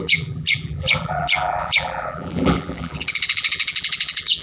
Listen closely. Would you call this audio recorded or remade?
remade